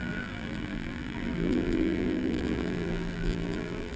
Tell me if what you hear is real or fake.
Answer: fake